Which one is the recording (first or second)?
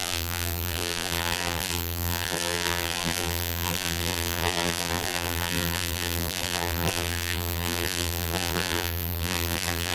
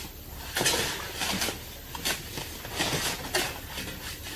second